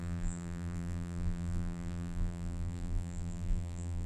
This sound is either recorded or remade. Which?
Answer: remade